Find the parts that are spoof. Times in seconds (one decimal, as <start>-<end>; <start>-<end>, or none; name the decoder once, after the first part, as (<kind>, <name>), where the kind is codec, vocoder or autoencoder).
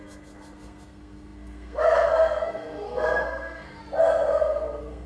0.0-3.8 (codec, SNAC); 4.4-5.1